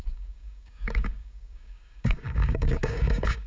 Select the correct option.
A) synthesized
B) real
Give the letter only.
A